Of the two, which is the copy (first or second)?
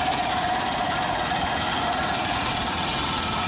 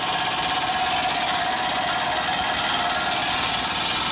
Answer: first